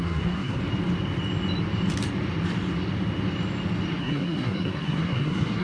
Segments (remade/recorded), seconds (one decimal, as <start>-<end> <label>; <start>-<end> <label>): 0.0-0.6 remade; 0.6-4.0 recorded; 4.0-5.6 remade